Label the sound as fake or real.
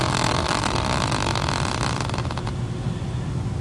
real